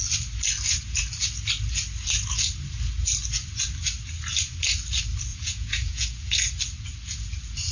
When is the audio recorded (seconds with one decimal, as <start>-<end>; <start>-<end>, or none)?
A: 0.0-5.3; 6.5-7.7